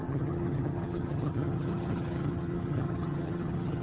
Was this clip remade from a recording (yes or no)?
yes